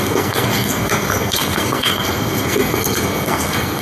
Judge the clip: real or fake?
fake